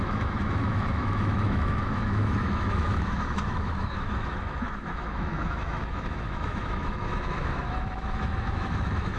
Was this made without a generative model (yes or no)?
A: no